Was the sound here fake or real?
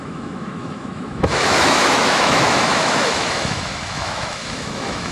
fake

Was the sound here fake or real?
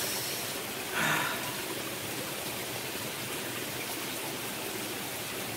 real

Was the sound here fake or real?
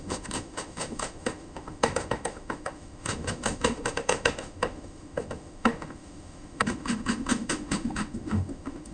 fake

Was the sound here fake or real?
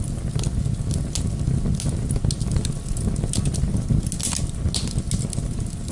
real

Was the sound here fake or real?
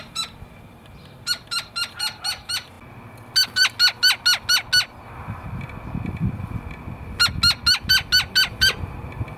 real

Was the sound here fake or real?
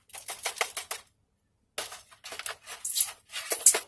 real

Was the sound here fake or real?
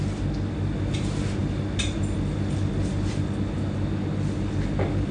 real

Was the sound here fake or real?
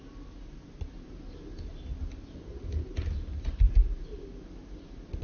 real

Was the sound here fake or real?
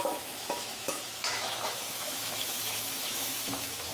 fake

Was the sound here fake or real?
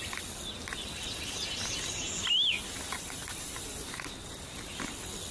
real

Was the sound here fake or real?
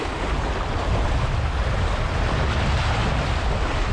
real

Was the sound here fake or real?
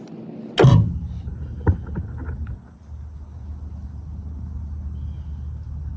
real